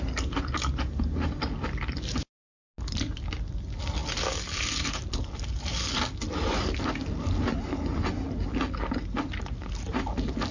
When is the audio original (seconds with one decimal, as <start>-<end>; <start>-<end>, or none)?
0.0-10.5

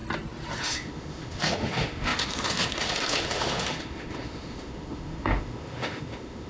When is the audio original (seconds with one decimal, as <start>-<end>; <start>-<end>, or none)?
0.0-0.6

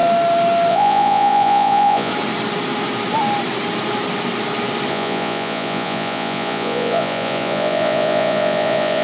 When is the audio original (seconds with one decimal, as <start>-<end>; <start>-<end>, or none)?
0.0-0.7; 2.1-4.9

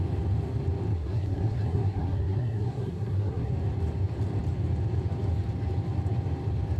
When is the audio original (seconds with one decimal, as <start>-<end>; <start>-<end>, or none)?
0.0-0.9; 3.5-6.8

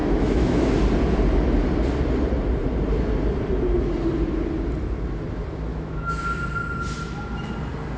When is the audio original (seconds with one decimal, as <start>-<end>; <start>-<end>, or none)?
0.7-5.7; 6.2-8.0

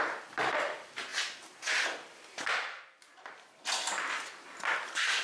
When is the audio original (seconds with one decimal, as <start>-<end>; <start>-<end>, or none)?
0.0-5.2